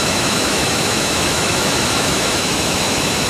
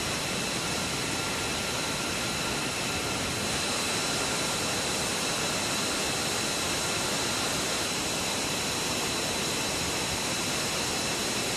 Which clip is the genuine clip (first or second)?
second